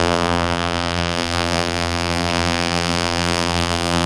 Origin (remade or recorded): remade